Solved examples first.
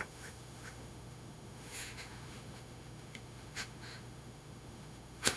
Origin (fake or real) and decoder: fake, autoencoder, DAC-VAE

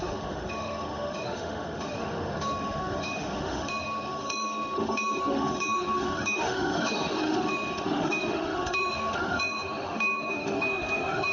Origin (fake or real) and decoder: fake, autoencoder, DAC-VAE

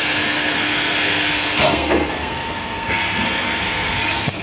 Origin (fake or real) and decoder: fake, codec, SNAC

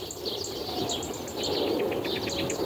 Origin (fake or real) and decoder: real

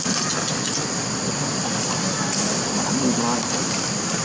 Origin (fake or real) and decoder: real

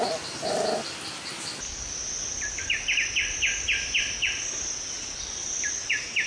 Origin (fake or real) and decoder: real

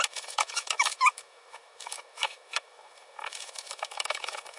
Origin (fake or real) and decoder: fake, autoencoder, DAC-VAE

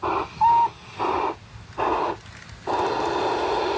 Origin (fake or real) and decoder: real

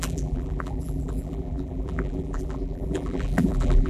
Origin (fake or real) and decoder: fake, vocoder, BigVGAN v2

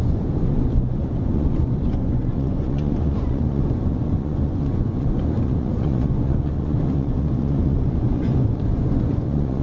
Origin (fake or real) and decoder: fake, vocoder, Vocos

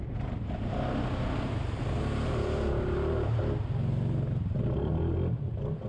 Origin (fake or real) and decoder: real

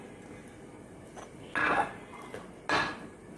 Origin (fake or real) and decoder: real